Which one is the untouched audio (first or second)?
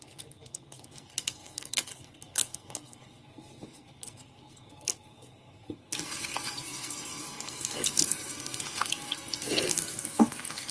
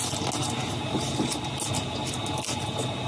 second